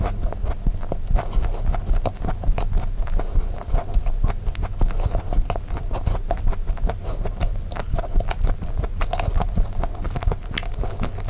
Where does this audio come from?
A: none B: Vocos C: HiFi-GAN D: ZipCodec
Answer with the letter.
A